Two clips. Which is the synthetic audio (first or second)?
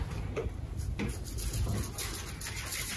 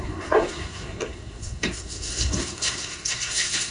second